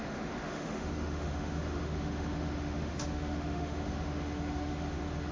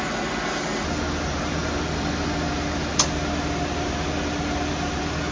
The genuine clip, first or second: second